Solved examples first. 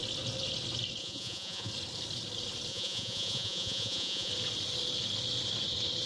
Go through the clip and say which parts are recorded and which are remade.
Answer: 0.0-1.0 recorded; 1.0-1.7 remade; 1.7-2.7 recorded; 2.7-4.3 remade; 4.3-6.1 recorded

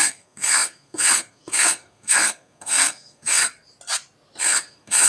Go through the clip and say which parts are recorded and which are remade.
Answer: 0.0-3.4 remade; 3.4-4.4 recorded; 4.4-5.1 remade